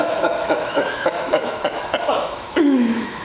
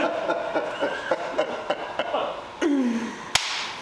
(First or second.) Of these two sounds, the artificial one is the first